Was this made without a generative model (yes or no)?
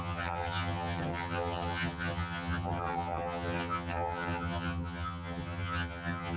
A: no